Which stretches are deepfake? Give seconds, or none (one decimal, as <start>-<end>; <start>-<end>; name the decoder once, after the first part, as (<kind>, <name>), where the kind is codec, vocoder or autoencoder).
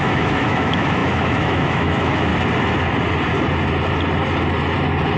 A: 0.0-2.3 (autoencoder, DAC-VAE)